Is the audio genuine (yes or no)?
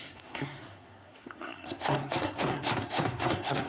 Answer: no